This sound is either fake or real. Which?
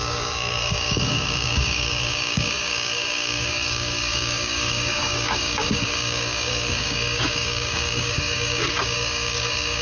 fake